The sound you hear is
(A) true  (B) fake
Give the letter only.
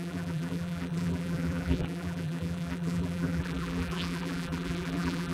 B